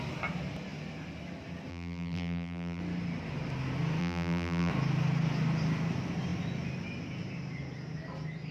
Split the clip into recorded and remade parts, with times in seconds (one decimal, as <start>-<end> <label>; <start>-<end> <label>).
0.0-1.7 recorded; 1.7-2.8 remade; 2.8-4.0 recorded; 4.0-4.7 remade; 4.7-8.5 recorded